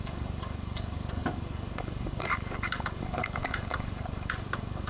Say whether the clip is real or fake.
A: fake